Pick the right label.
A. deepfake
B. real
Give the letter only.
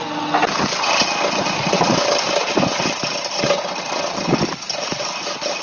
B